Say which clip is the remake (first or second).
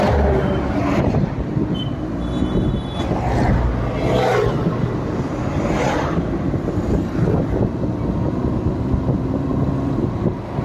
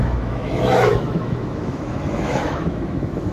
second